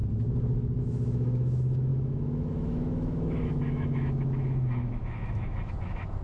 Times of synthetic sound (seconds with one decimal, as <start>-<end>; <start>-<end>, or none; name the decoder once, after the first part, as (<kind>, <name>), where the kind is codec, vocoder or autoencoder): 0.8-6.2 (autoencoder, DAC-VAE)